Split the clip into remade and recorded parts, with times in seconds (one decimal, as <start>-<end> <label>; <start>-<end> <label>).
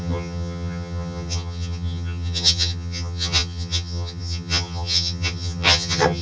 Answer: 0.0-6.2 remade